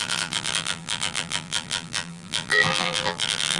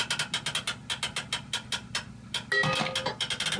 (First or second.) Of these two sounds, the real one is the second